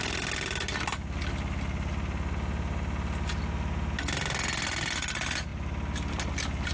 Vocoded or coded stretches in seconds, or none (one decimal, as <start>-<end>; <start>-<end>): none